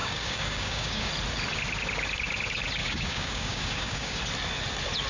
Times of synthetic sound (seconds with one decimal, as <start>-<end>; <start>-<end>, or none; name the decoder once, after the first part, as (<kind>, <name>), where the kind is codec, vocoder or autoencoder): 0.0-1.1 (codec, DAC); 2.8-4.2